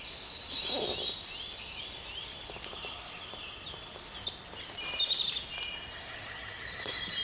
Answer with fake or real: real